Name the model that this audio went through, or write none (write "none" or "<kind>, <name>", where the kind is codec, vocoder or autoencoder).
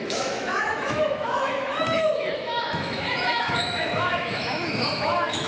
autoencoder, DAC-VAE